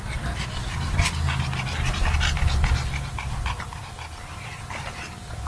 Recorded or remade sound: recorded